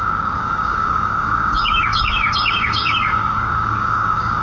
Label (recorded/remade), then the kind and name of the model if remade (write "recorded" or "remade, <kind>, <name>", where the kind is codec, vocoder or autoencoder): remade, codec, DAC